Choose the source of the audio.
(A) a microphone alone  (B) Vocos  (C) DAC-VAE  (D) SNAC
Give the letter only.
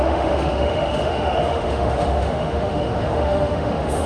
C